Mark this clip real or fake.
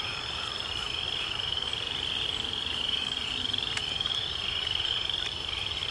fake